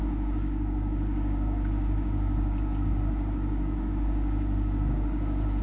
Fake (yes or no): yes